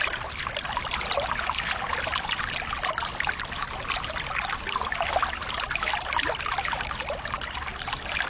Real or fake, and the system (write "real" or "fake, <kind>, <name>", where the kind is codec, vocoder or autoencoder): real